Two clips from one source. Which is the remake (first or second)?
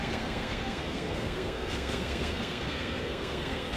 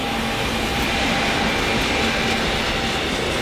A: first